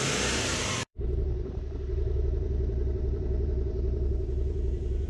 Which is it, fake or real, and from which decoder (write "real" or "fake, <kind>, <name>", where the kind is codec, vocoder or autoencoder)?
fake, vocoder, BigVGAN v2